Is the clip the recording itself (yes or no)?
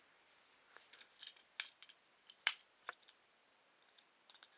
yes